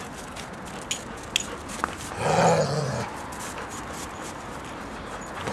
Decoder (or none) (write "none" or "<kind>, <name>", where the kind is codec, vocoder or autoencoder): none